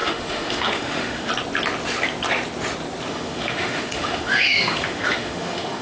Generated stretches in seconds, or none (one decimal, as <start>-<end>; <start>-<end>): 0.0-1.3; 3.1-5.8